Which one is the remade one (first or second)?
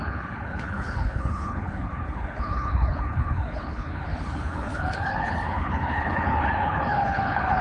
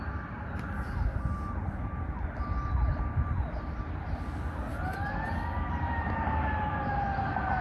first